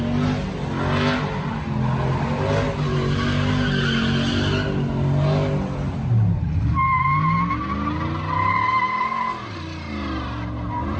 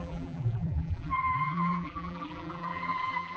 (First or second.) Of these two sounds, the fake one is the second